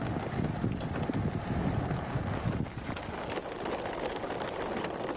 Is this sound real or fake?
real